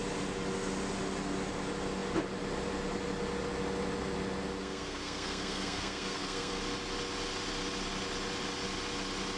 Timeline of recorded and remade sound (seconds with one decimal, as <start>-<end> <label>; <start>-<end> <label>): 0.0-4.6 recorded; 4.6-6.6 remade; 6.6-9.4 recorded

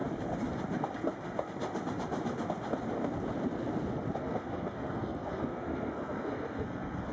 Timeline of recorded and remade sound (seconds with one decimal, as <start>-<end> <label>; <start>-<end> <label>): 0.0-4.2 recorded; 4.2-7.1 remade

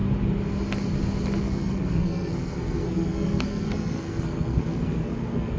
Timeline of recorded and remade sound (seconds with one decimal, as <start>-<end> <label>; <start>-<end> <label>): 0.0-1.4 recorded; 1.4-5.6 remade

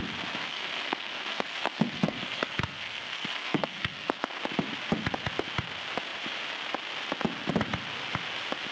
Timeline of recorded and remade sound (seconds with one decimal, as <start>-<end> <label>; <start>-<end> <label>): 0.0-0.5 recorded; 0.5-4.4 remade; 4.4-8.7 recorded

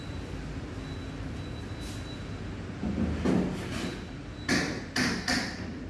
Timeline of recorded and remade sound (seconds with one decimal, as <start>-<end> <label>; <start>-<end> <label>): 0.0-5.9 recorded

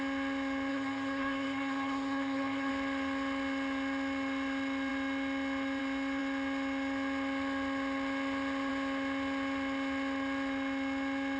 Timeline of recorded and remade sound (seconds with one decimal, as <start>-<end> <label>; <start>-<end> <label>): 0.0-0.7 recorded; 0.7-2.7 remade; 2.7-11.4 recorded